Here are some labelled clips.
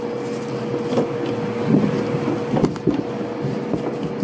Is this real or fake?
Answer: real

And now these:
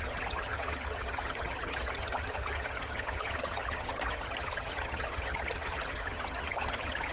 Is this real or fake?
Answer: fake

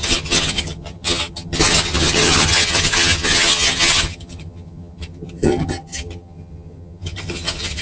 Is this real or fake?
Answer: fake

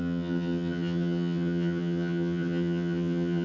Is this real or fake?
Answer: fake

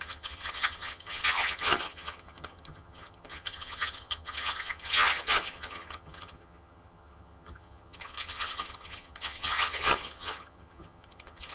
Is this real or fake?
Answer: fake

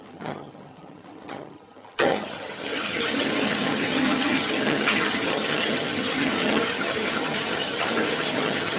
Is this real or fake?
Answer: fake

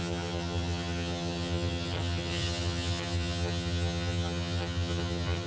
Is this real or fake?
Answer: fake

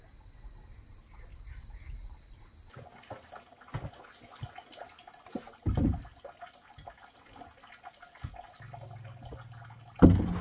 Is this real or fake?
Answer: real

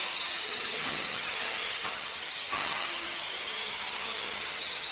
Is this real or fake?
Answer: fake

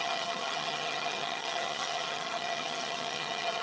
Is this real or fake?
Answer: fake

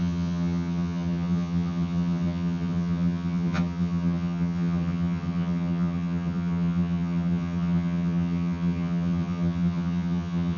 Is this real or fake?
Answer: fake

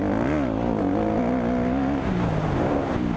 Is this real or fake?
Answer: real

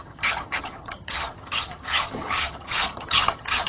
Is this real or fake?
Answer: fake